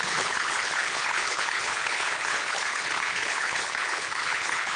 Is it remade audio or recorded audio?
remade